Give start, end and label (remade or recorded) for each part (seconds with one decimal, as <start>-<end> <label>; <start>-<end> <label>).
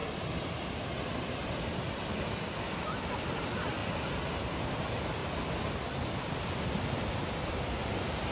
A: 0.0-3.8 remade; 3.8-4.8 recorded; 4.8-5.2 remade; 5.2-5.8 recorded; 5.8-8.3 remade